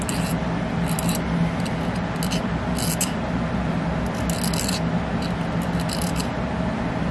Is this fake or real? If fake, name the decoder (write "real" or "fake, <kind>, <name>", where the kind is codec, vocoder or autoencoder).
real